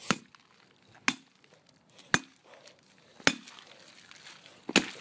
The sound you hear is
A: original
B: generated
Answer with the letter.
A